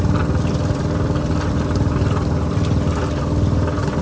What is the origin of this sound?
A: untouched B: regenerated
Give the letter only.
A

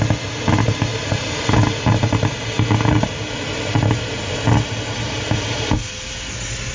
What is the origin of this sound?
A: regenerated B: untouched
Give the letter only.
B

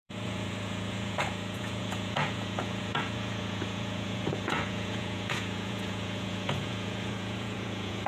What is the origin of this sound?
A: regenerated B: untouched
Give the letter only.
A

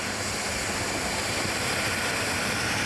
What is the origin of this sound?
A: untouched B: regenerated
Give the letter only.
A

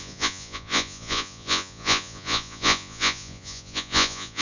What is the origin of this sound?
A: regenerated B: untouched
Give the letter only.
A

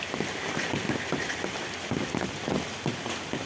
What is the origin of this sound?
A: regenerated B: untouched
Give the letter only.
B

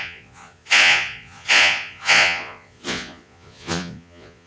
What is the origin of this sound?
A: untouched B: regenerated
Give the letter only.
B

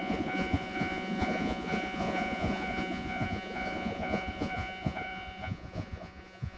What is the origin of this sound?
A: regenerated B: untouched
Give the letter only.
A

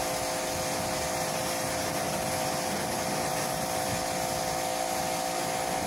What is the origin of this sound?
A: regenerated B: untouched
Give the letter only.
B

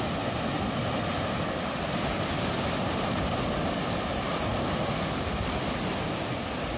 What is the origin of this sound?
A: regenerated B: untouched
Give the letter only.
B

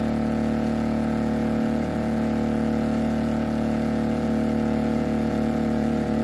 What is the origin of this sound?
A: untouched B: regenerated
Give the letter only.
B